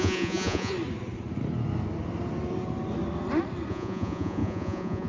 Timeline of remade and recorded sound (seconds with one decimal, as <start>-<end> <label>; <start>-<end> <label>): 0.0-0.7 remade; 0.7-3.7 recorded; 3.7-5.1 remade